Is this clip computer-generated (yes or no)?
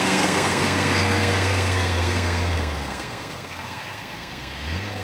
yes